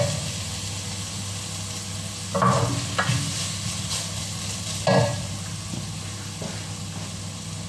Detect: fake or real real